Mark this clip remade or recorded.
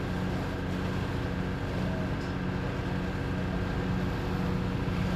recorded